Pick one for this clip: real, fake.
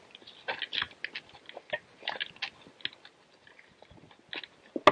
real